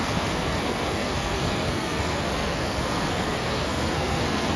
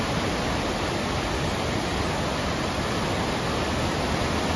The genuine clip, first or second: second